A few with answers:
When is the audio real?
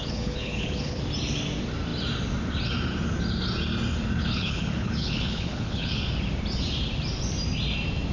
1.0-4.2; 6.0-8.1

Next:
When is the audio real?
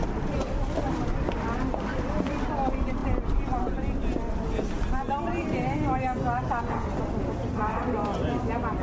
0.0-8.8